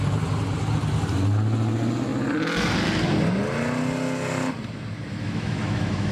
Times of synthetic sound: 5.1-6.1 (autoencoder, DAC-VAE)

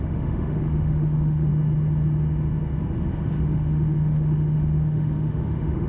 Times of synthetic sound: 0.0-1.5 (autoencoder, DAC-VAE); 3.4-5.9

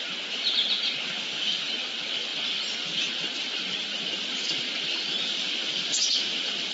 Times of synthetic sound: 1.2-1.7 (autoencoder, DAC-VAE)